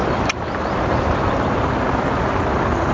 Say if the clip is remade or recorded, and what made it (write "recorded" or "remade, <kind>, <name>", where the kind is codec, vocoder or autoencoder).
recorded